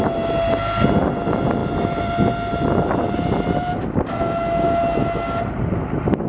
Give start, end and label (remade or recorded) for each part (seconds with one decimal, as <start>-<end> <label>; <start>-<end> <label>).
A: 0.0-6.3 recorded